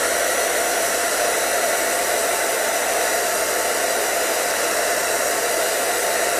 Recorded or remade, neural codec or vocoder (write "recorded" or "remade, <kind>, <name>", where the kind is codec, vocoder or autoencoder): recorded